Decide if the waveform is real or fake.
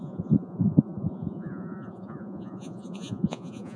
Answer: fake